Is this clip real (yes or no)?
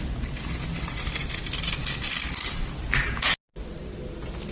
yes